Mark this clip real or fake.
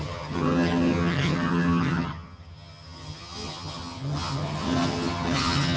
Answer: fake